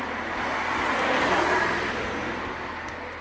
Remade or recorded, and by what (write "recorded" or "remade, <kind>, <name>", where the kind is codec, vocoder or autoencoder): recorded